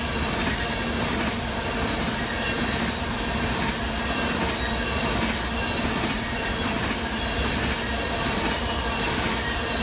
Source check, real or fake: real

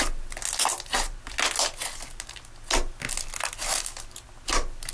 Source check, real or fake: real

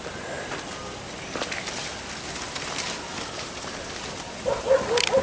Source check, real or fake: real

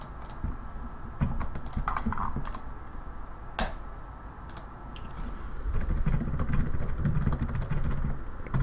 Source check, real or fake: real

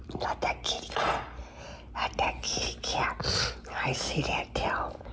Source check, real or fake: real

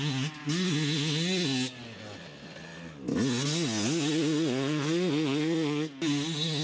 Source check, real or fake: real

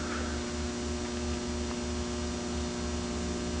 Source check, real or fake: real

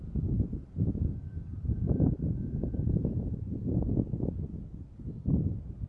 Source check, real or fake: real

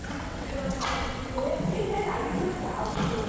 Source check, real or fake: fake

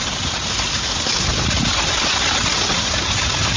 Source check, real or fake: real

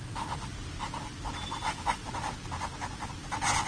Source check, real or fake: real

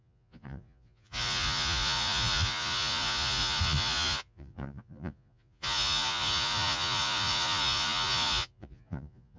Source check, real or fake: fake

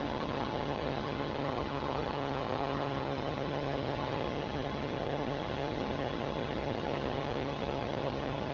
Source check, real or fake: fake